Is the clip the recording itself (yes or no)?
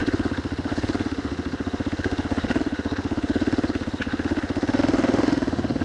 no